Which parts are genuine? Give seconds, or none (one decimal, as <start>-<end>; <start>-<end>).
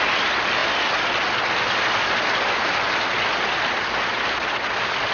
0.0-5.1